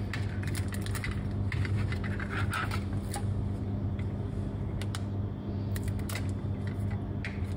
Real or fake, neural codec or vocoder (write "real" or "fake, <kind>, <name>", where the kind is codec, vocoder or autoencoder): real